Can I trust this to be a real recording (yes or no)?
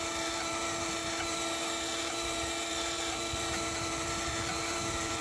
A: no